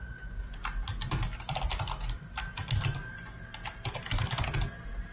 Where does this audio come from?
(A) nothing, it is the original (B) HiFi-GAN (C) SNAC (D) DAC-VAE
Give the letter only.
A